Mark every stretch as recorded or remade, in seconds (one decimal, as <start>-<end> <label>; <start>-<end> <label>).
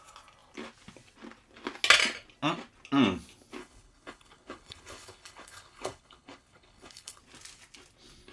0.0-3.6 recorded; 3.6-7.2 remade; 7.2-8.3 recorded